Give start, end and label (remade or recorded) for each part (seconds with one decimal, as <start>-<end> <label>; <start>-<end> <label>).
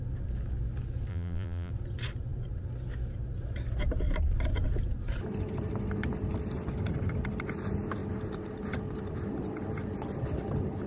0.0-1.1 recorded; 1.1-1.7 remade; 1.7-10.9 recorded